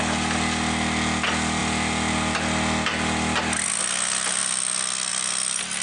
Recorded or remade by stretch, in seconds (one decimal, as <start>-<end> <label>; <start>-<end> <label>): 0.0-5.8 recorded